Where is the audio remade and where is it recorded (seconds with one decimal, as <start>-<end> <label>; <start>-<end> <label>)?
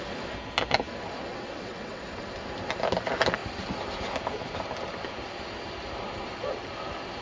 0.0-1.3 recorded; 1.3-2.0 remade; 2.0-7.2 recorded